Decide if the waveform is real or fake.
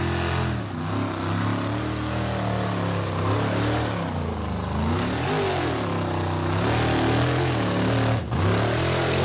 real